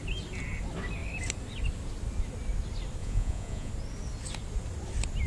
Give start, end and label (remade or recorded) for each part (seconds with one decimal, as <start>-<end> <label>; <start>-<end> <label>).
0.0-3.0 recorded; 3.0-3.7 remade; 3.7-5.3 recorded